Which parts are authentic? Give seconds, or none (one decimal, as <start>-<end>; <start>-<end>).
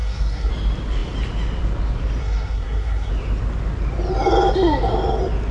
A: 0.5-2.2; 3.1-5.5